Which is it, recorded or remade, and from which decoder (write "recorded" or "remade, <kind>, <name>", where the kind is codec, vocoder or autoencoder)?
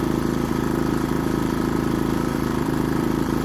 remade, vocoder, BigVGAN v2